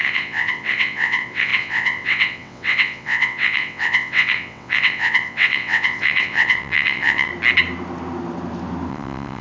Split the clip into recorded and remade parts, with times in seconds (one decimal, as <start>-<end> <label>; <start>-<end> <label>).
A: 0.0-7.3 remade; 7.3-8.9 recorded; 8.9-9.4 remade